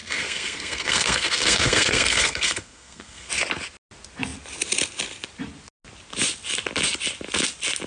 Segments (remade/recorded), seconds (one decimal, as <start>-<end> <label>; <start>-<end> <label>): 0.0-3.3 remade; 3.3-7.9 recorded